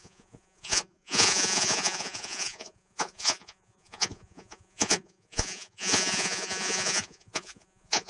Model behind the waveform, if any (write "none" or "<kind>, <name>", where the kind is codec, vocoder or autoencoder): vocoder, Vocos